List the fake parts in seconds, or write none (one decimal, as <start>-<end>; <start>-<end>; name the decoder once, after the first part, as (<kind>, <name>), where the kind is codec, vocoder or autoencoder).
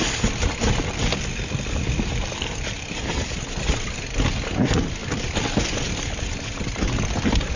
none